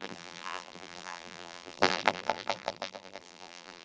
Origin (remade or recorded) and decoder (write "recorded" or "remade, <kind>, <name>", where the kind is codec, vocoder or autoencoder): remade, vocoder, BigVGAN v2